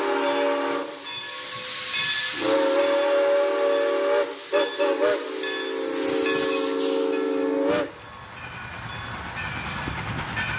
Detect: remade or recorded recorded